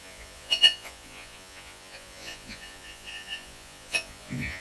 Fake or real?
fake